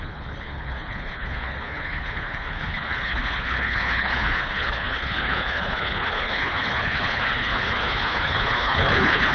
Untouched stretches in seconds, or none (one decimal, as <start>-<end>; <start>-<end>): none